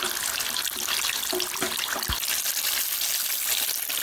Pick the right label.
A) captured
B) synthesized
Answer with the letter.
A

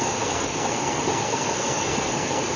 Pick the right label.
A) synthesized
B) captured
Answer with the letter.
A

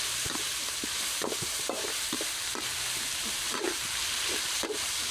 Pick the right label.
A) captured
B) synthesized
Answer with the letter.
B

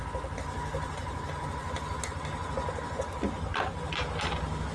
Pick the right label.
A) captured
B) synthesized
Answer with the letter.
A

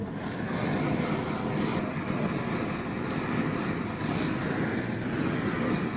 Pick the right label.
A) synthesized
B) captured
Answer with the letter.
B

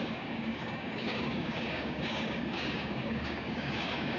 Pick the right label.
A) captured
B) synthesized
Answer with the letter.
B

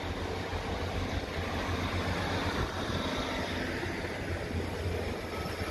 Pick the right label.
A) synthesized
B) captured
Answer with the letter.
B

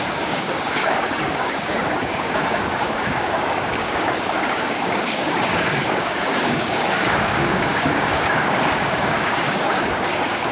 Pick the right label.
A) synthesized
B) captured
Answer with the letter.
A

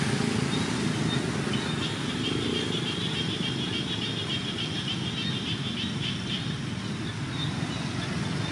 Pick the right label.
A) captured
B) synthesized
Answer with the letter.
A